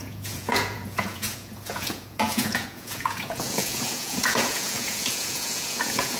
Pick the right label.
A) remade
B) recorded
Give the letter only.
A